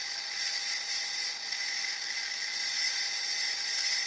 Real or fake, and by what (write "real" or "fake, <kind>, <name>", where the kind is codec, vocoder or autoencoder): real